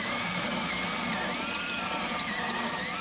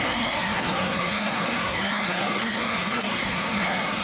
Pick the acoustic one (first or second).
first